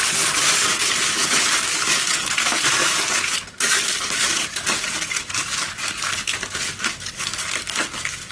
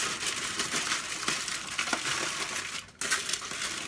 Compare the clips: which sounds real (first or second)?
second